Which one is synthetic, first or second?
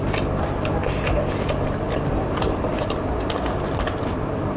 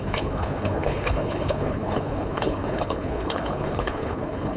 second